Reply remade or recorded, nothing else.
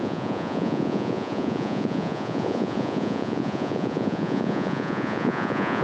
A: remade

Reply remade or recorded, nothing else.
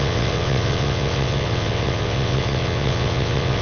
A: remade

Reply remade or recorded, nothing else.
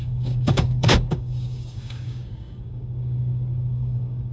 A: remade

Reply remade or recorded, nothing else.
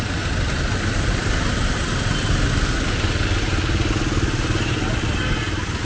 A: recorded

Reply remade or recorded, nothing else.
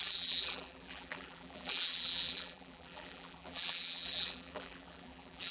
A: remade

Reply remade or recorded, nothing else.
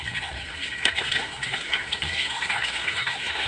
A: remade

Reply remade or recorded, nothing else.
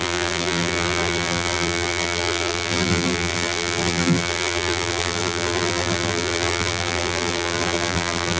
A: remade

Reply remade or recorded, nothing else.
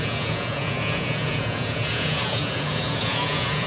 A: remade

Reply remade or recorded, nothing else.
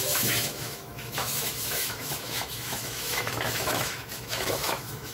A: remade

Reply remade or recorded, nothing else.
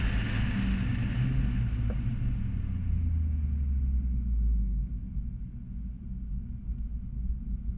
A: recorded